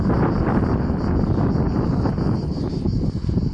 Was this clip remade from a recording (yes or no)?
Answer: no